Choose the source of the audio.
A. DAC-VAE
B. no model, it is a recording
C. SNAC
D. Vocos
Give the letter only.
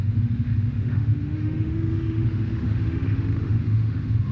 A